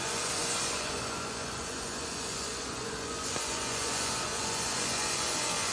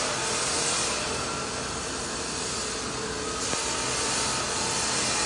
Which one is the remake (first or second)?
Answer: first